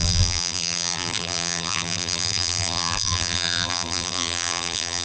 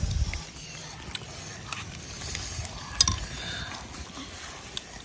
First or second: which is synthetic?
first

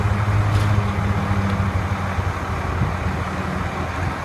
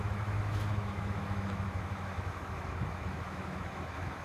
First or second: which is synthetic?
second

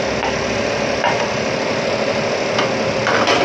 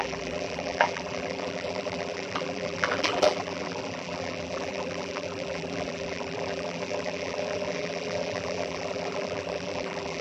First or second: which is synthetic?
second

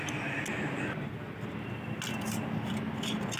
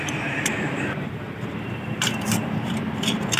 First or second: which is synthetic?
second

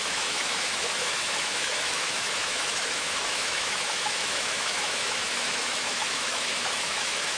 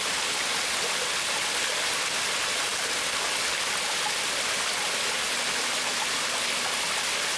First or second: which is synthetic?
first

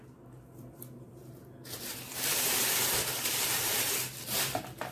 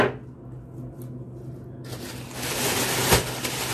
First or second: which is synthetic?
first